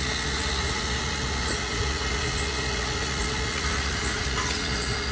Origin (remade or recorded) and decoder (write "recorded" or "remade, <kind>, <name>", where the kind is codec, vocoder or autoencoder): remade, vocoder, Vocos